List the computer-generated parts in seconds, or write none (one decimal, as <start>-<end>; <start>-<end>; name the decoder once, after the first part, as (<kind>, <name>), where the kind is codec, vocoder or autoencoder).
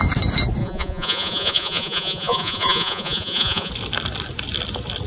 0.6-3.7 (vocoder, Vocos)